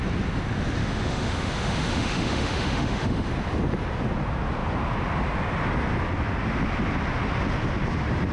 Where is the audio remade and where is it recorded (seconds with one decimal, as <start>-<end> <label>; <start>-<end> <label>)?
0.0-0.8 recorded; 0.8-3.3 remade; 3.3-8.3 recorded